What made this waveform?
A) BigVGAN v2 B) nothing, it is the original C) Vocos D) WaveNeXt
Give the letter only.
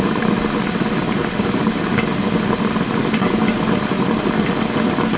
B